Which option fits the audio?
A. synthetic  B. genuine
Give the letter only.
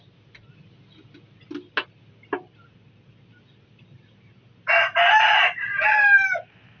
B